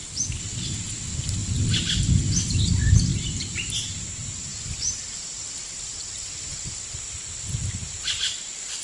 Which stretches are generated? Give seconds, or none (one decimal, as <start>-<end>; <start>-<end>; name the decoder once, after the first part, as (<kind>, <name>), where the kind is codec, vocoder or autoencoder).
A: 3.1-3.8 (vocoder, BigVGAN v2)